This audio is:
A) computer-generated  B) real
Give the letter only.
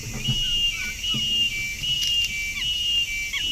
B